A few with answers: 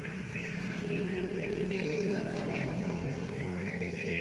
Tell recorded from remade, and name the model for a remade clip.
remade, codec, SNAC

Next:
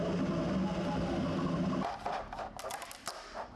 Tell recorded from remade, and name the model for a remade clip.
recorded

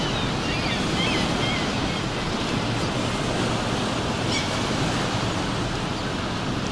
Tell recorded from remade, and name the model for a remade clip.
recorded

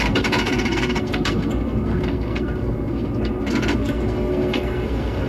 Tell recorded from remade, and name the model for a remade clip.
remade, codec, SNAC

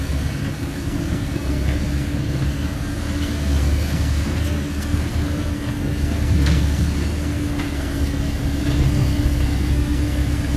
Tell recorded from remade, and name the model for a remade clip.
remade, codec, SNAC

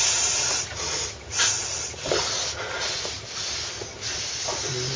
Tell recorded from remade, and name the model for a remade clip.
recorded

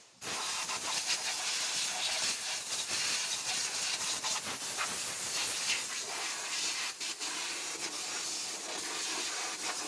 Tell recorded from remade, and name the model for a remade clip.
recorded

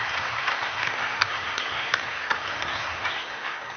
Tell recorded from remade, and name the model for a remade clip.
remade, codec, SNAC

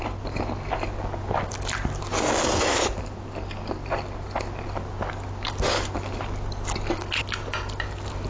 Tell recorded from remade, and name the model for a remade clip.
recorded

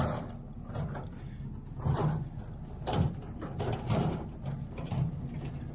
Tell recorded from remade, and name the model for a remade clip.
recorded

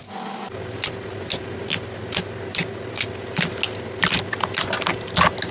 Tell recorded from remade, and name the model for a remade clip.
recorded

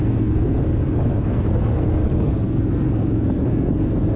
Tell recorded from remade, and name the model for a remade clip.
remade, codec, SNAC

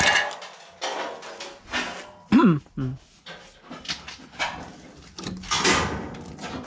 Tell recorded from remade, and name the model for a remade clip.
recorded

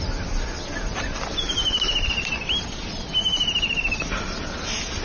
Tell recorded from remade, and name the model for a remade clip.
recorded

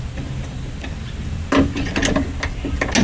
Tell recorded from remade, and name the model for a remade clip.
recorded